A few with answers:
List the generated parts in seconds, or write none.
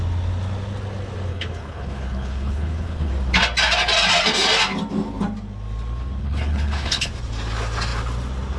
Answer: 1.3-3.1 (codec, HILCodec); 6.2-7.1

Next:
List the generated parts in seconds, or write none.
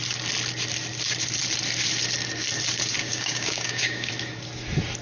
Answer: 3.0-4.1 (codec, DAC)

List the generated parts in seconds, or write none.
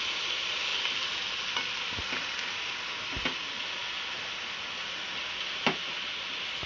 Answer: none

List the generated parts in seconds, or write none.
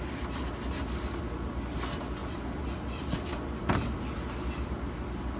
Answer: none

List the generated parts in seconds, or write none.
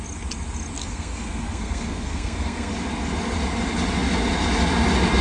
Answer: 0.8-2.7 (codec, SNAC)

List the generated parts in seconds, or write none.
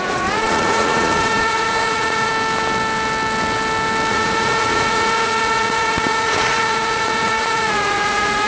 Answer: 0.0-2.3 (vocoder, Vocos); 4.1-8.5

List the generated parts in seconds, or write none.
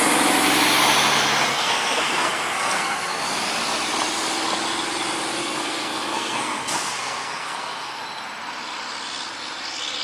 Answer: 1.5-3.2 (codec, SNAC); 5.4-8.0